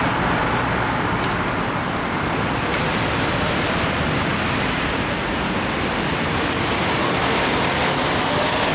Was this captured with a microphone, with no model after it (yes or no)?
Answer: yes